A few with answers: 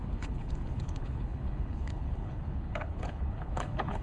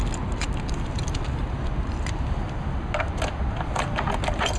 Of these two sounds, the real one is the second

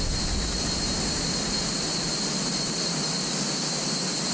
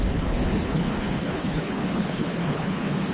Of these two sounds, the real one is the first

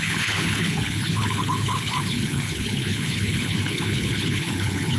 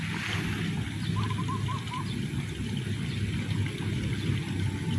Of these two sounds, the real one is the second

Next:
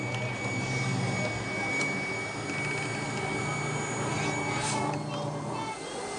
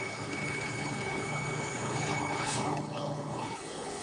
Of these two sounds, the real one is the first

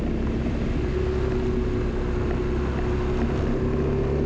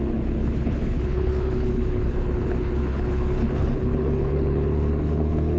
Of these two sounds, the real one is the first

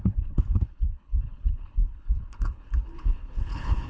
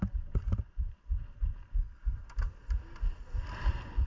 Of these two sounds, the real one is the second